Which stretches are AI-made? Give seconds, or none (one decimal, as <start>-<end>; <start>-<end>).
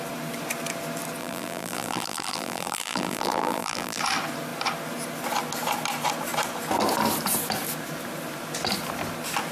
1.2-4.0